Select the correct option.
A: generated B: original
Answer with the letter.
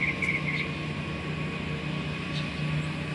B